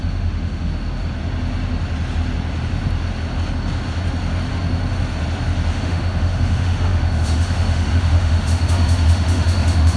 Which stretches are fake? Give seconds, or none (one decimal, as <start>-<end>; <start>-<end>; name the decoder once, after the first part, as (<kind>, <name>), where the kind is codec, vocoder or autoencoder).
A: 0.0-0.7 (autoencoder, DAC-VAE); 5.7-10.0